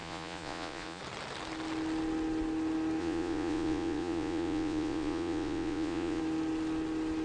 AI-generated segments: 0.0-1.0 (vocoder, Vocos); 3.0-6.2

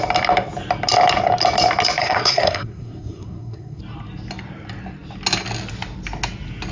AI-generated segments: 2.0-3.8 (codec, SNAC)

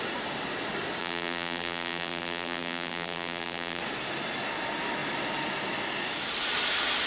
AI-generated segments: 1.0-3.8 (vocoder, BigVGAN v2)

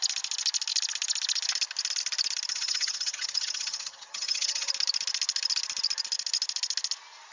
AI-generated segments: 2.5-4.7 (vocoder, HiFi-GAN)

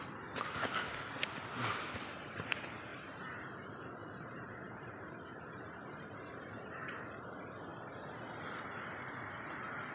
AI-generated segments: 2.9-3.4 (vocoder, BigVGAN v2); 4.0-7.1

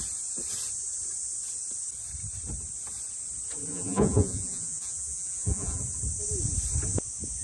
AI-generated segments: 3.7-5.8 (vocoder, Vocos)

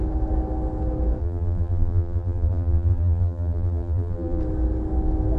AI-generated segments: 1.2-4.4 (vocoder, BigVGAN v2)